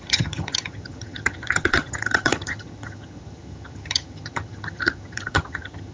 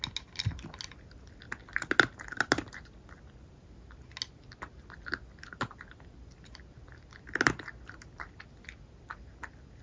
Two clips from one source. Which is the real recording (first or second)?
second